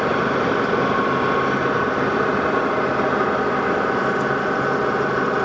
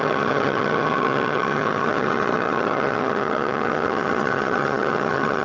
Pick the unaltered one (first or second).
first